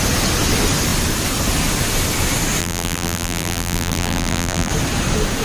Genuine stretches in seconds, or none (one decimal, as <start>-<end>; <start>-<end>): 0.0-2.6; 4.7-5.4